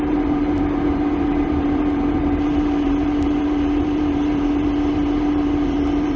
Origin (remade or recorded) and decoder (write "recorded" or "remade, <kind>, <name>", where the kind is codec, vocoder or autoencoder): remade, vocoder, BigVGAN v2